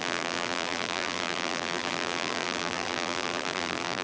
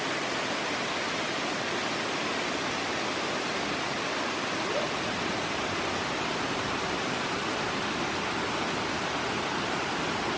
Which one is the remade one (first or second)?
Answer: first